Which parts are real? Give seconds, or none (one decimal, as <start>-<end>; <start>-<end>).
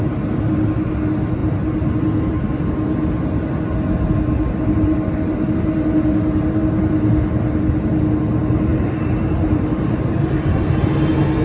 0.0-8.7; 10.7-11.4